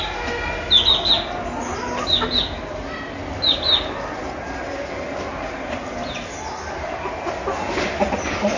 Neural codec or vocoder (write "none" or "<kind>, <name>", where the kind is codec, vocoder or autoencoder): none